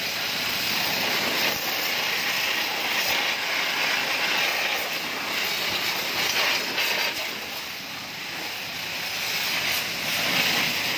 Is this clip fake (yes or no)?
no